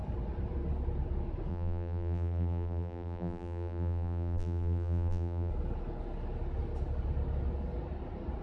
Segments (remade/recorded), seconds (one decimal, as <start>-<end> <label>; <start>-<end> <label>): 0.0-1.5 recorded; 1.5-5.5 remade; 5.5-8.4 recorded